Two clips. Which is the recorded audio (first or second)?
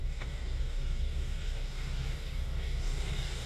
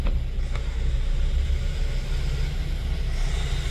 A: second